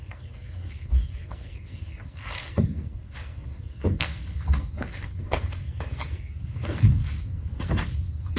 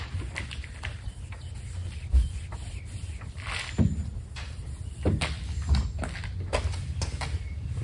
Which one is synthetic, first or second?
first